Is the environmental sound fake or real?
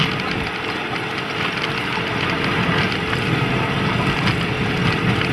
real